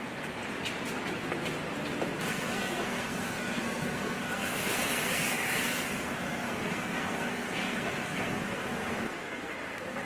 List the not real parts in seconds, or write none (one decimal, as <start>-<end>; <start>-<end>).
0.0-0.4; 2.3-10.1